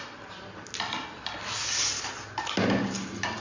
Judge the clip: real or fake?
real